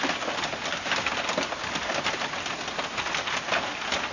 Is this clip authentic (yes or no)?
yes